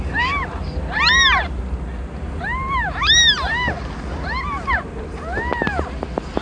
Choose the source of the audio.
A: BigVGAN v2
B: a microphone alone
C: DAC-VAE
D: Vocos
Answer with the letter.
B